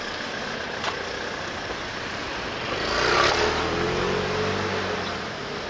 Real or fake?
real